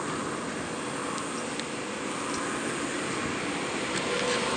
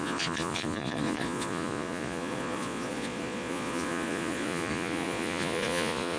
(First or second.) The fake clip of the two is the second